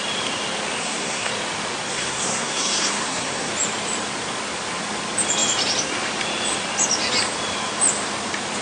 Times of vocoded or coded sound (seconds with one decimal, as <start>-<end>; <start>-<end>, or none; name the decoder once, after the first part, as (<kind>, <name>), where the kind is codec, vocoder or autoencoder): 0.8-1.3 (codec, SNAC); 1.9-3.5